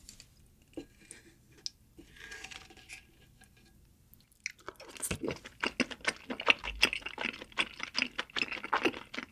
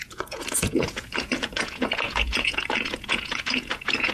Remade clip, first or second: second